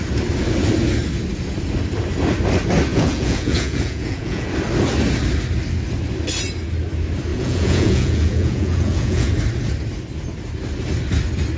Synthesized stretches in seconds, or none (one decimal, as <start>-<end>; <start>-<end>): 2.9-4.5; 7.3-9.3